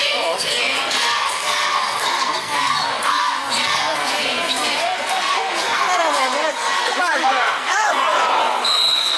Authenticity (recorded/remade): remade